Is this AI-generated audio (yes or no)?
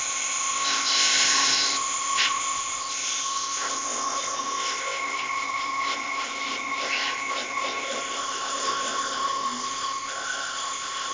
yes